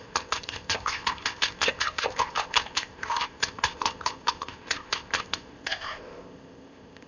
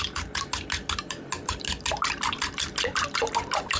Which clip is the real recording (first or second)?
second